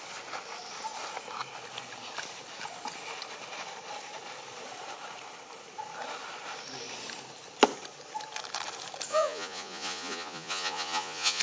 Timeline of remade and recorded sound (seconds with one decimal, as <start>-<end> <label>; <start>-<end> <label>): 0.0-9.1 recorded; 9.1-11.4 remade